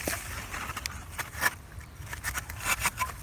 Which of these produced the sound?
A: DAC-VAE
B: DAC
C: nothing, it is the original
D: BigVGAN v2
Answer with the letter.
C